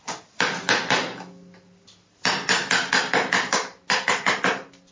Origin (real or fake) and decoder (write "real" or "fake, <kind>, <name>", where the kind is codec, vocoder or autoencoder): real